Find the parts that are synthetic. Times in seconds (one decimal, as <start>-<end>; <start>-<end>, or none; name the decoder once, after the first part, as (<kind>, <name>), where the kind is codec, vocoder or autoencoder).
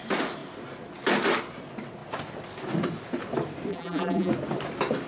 3.7-4.3 (vocoder, BigVGAN v2)